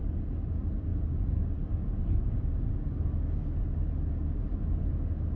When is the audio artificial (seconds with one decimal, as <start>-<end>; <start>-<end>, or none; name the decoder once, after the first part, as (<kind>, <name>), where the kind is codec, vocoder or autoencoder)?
none